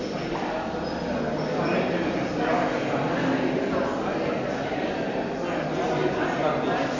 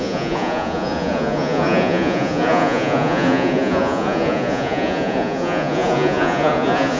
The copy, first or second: second